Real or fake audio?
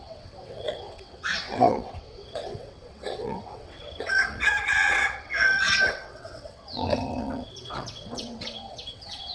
fake